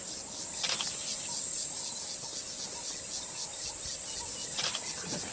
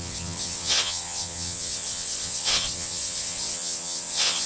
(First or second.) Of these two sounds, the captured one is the first